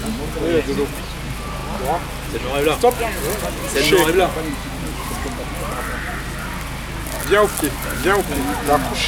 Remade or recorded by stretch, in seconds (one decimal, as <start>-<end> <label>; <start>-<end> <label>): 0.0-9.1 recorded